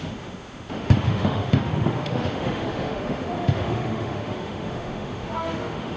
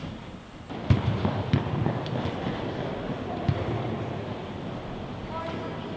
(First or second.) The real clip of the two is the second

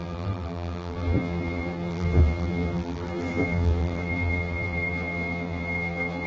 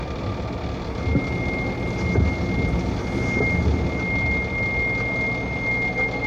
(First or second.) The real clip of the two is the second